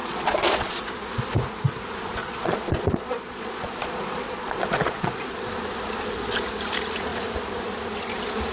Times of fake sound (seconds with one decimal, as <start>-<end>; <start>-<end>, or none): 0.0-0.8; 2.2-5.5